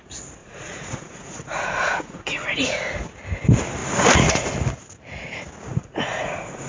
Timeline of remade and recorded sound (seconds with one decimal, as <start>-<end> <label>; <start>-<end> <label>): 0.0-0.4 recorded; 0.4-2.9 remade; 2.9-3.8 recorded; 3.8-4.5 remade; 4.5-5.7 recorded; 5.7-6.7 remade